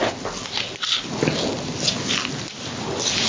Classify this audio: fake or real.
real